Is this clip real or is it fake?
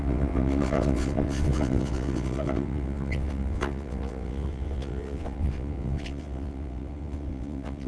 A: fake